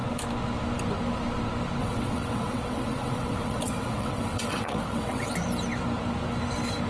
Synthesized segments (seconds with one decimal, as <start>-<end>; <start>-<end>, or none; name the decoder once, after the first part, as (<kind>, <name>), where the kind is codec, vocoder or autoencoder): 1.8-5.3 (vocoder, WaveNeXt)